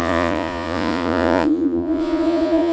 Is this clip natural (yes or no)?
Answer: no